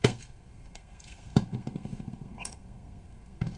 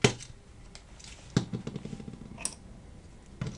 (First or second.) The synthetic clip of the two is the first